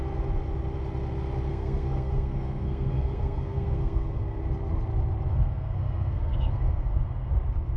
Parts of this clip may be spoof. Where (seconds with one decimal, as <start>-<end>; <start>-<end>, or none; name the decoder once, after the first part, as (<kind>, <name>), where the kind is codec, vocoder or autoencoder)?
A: 1.5-4.4 (codec, SNAC); 5.3-7.3